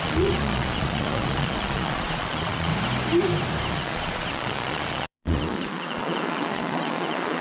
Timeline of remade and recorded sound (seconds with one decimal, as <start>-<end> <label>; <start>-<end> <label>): 0.0-2.7 remade; 2.7-3.7 recorded; 3.7-7.4 remade